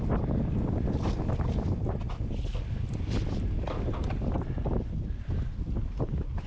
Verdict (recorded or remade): recorded